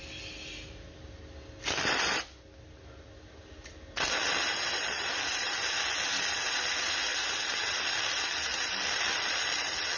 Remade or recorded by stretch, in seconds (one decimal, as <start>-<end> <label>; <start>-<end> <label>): 0.0-10.0 recorded